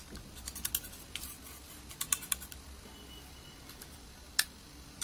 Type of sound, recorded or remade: recorded